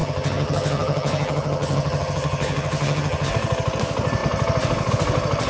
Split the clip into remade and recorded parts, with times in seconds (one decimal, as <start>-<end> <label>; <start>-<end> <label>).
0.0-3.3 remade; 3.3-5.5 recorded